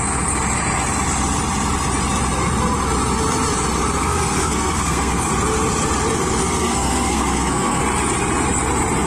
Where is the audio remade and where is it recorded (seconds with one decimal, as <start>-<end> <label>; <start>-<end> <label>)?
0.0-4.0 recorded; 4.0-5.3 remade; 5.3-6.4 recorded; 6.4-7.8 remade; 7.8-9.1 recorded